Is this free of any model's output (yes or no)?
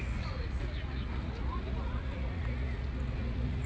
no